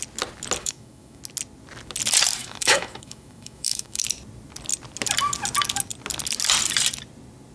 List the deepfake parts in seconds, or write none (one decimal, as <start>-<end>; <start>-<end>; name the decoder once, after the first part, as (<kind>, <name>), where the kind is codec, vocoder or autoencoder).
0.6-1.2 (autoencoder, DAC-VAE); 2.4-4.0